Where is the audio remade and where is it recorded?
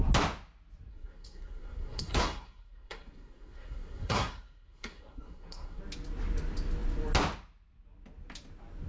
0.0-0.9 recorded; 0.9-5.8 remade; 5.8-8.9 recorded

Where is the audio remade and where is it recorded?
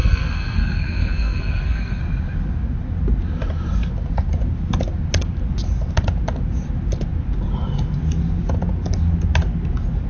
0.0-2.0 remade; 2.0-10.1 recorded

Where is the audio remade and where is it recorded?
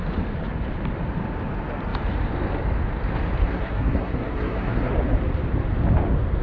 0.0-3.4 recorded; 3.4-4.9 remade; 4.9-6.4 recorded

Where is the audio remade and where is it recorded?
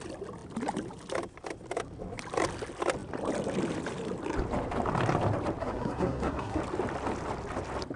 0.0-5.6 recorded; 5.6-6.6 remade; 6.6-8.0 recorded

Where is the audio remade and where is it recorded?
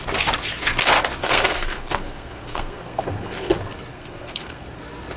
0.0-1.2 recorded; 1.2-3.5 remade; 3.5-3.9 recorded; 3.9-4.8 remade; 4.8-5.2 recorded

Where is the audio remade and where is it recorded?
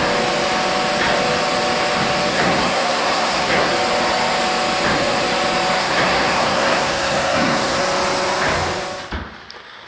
0.0-2.3 recorded; 2.3-3.7 remade; 3.7-5.8 recorded; 5.8-7.8 remade; 7.8-9.9 recorded